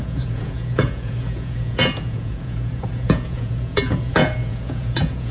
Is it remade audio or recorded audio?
remade